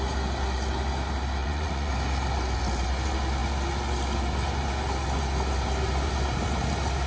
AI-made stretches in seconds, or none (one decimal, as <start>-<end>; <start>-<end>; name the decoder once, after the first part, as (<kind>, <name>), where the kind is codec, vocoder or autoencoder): 1.4-1.9 (vocoder, Vocos)